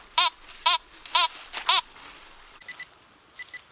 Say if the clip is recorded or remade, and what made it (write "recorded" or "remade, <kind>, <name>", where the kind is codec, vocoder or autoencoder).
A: recorded